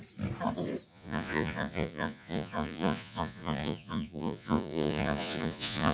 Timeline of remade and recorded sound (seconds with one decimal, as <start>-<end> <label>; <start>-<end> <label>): 0.0-0.9 recorded; 0.9-5.9 remade